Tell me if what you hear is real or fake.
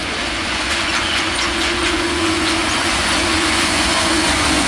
fake